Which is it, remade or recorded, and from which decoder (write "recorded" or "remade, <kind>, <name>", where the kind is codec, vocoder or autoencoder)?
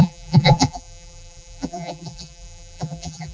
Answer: remade, vocoder, BigVGAN v2